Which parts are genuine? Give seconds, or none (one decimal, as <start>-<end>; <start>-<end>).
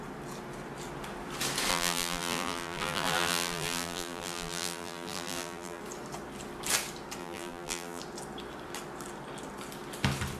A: 0.0-1.7; 5.8-7.2; 8.0-10.4